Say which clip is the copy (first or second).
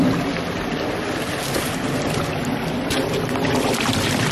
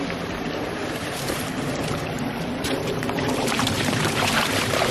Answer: second